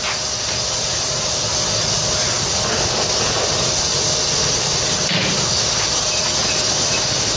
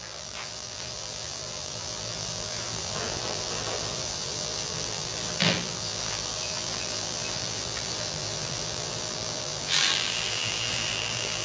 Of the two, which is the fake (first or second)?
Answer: second